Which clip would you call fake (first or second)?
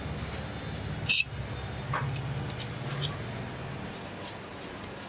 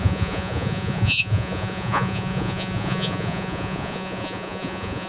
second